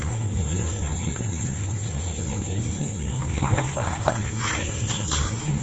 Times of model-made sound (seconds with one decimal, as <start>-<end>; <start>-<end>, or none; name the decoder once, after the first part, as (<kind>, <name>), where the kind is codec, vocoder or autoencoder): 0.0-5.6 (codec, SNAC)